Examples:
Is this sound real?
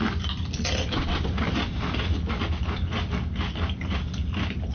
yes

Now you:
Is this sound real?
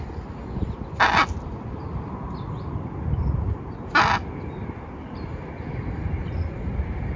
yes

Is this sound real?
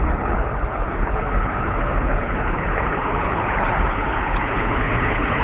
no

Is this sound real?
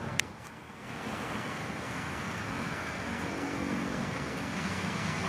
no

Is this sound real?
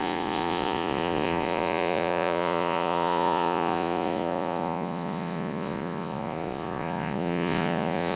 no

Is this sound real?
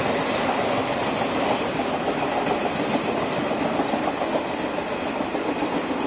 yes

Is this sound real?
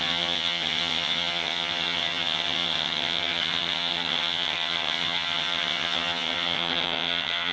no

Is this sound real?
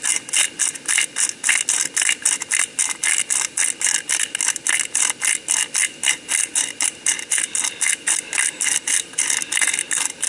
yes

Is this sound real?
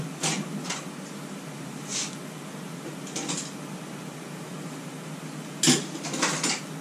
yes